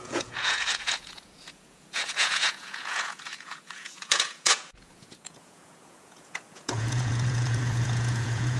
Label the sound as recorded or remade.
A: remade